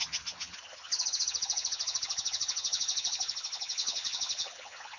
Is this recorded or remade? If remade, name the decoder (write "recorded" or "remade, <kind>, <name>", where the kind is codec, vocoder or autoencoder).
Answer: remade, vocoder, HiFi-GAN